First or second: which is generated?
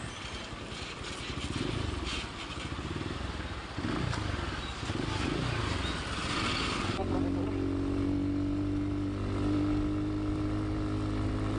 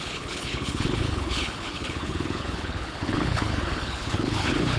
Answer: second